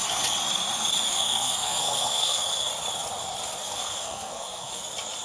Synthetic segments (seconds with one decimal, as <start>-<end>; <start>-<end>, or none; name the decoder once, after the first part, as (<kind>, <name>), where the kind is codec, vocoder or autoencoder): 1.1-2.7 (codec, SNAC); 3.6-4.8